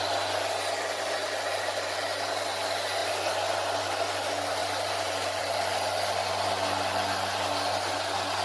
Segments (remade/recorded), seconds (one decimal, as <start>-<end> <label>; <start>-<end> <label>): 0.0-4.6 recorded; 4.6-5.4 remade; 5.4-8.4 recorded